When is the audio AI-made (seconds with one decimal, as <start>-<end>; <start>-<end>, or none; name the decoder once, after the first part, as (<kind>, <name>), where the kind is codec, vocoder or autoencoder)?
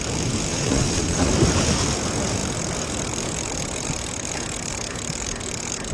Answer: 0.5-1.3 (vocoder, WaveNeXt)